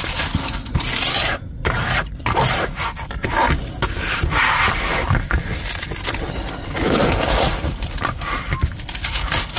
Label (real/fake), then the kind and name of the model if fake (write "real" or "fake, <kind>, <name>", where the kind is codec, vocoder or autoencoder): real